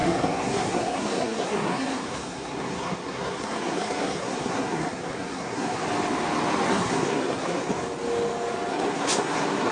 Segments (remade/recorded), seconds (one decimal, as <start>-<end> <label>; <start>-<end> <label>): 0.0-5.8 remade; 5.8-6.7 recorded; 6.7-7.8 remade; 7.8-8.7 recorded; 8.7-9.7 remade